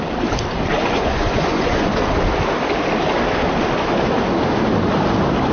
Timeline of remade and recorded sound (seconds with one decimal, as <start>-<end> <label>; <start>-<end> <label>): 0.0-0.7 recorded; 0.7-1.9 remade; 1.9-5.5 recorded